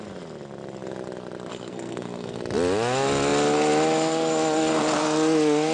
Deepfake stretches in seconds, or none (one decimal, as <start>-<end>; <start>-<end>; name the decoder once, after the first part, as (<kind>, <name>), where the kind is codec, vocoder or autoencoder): 1.5-2.4 (codec, SNAC)